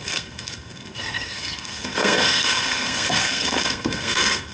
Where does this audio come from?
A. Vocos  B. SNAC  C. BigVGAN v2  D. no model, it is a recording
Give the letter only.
B